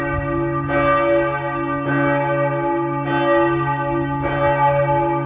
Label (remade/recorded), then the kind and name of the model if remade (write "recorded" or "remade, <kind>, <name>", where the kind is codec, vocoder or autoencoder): recorded